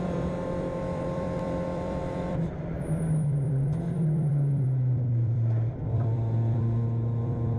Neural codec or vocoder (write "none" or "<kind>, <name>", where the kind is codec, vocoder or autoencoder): vocoder, BigVGAN v2